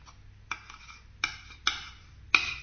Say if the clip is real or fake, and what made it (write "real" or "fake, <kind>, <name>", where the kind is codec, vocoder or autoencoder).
real